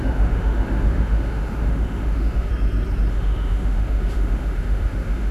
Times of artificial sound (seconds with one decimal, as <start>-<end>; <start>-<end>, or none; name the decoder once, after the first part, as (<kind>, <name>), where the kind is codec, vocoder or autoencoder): 0.0-2.5 (autoencoder, DAC-VAE); 3.1-5.3